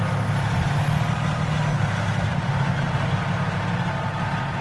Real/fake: real